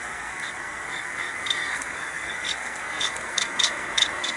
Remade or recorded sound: remade